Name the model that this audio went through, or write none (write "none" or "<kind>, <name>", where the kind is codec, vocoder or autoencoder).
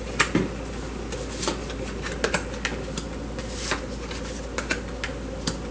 none